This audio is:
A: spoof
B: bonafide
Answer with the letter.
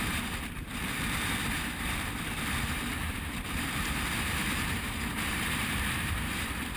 A